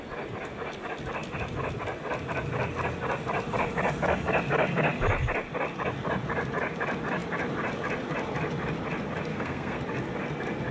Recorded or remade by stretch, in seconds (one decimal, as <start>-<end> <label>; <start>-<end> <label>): 0.0-9.3 recorded; 9.3-9.8 remade; 9.8-10.7 recorded